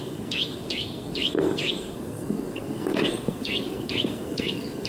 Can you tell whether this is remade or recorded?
remade